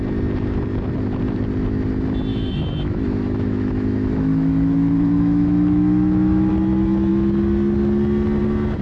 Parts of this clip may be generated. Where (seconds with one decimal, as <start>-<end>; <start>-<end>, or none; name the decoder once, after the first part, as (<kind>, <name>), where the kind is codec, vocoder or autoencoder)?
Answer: 2.3-6.5 (autoencoder, DAC-VAE)

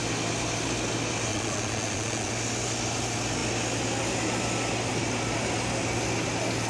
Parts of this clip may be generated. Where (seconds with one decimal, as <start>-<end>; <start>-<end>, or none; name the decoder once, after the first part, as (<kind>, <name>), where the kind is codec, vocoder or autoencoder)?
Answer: 1.3-2.3 (vocoder, Vocos)

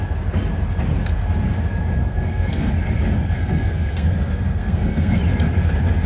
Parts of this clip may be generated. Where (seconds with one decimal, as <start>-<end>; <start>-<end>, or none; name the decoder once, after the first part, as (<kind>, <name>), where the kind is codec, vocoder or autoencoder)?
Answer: 2.0-2.7 (codec, SNAC); 3.4-5.2

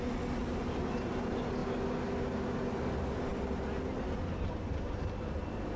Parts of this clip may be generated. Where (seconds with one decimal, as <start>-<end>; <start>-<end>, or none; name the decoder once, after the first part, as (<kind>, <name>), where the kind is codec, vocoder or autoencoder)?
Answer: 0.4-1.1 (vocoder, BigVGAN v2)

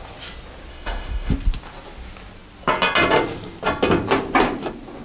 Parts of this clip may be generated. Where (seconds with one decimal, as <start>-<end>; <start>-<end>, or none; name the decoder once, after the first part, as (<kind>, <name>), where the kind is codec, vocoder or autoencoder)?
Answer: 0.7-1.3 (autoencoder, DAC-VAE)